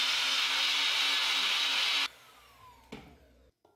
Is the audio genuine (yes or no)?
yes